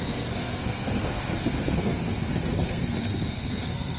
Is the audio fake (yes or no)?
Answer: yes